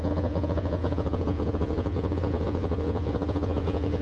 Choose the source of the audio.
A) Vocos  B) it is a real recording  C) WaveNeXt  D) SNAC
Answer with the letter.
A